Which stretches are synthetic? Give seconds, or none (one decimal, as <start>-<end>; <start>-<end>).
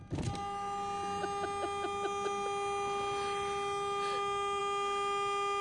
none